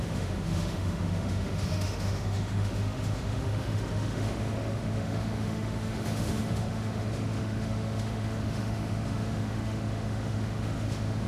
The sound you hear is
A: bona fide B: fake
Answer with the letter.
B